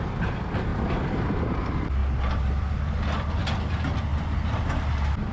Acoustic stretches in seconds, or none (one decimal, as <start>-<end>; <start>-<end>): 0.0-5.3